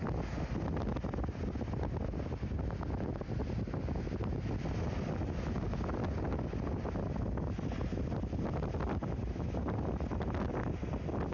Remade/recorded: recorded